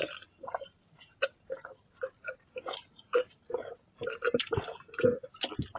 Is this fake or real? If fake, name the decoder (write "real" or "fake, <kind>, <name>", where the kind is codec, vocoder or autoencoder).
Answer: fake, vocoder, BigVGAN v2